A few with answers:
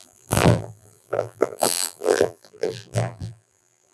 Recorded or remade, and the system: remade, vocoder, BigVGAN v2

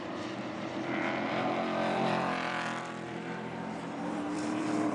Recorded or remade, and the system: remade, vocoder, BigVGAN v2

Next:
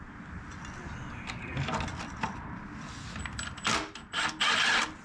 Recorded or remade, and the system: recorded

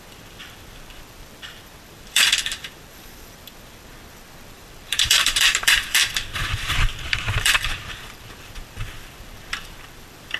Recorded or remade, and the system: remade, vocoder, BigVGAN v2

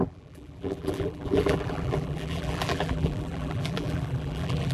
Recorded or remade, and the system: remade, vocoder, BigVGAN v2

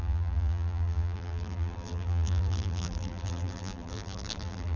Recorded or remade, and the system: remade, vocoder, BigVGAN v2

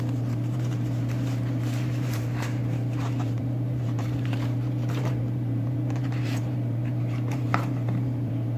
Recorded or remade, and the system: remade, vocoder, BigVGAN v2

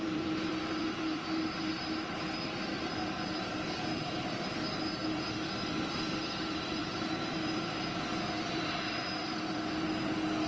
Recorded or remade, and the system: remade, vocoder, BigVGAN v2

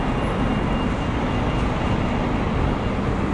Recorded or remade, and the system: recorded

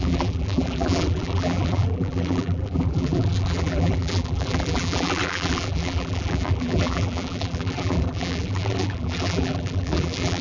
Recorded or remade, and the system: remade, vocoder, BigVGAN v2